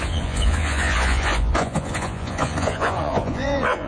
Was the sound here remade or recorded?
remade